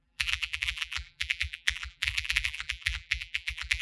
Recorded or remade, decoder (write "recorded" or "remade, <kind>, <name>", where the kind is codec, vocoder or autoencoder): remade, vocoder, BigVGAN v2